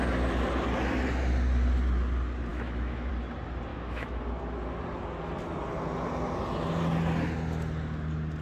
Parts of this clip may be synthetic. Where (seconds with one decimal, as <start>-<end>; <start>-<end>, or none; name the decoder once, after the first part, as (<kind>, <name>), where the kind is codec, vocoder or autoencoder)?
2.5-3.1 (autoencoder, DAC-VAE); 3.7-4.2

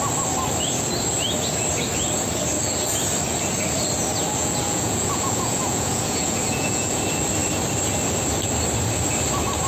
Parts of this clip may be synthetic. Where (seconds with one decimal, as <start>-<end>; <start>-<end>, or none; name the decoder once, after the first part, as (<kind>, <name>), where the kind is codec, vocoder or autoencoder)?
4.4-7.0 (vocoder, Vocos)